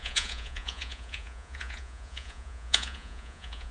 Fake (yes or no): yes